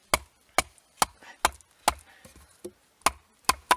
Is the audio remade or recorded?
recorded